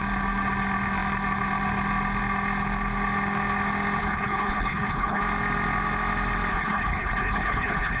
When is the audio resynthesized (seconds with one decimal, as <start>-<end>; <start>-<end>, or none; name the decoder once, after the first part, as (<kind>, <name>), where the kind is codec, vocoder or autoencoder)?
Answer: 4.0-5.2 (codec, HILCodec); 6.5-8.0